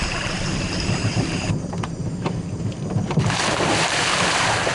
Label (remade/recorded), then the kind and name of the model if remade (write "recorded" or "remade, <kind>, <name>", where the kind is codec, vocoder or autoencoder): remade, vocoder, BigVGAN v2